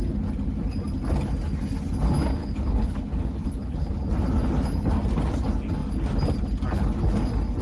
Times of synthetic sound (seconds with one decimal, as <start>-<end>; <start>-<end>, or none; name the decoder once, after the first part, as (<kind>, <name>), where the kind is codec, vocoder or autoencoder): 2.4-3.9 (codec, HILCodec)